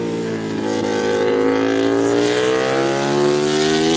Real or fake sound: real